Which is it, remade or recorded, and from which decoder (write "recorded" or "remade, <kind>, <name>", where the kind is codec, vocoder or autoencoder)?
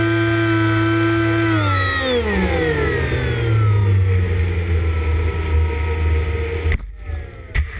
recorded